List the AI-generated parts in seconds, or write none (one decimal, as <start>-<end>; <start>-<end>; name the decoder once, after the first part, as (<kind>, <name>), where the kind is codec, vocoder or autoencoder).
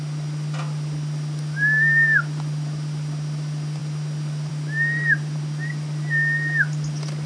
none